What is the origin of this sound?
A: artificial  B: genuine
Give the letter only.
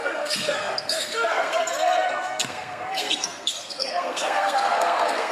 A